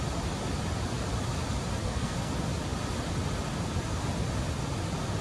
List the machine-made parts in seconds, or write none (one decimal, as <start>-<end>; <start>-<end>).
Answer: 1.8-2.3